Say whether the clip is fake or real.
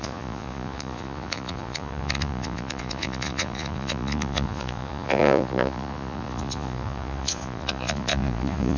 fake